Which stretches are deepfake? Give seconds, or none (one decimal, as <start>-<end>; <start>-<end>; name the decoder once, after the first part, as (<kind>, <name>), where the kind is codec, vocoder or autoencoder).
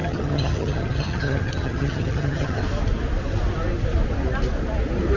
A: 0.0-2.6 (vocoder, HiFi-GAN)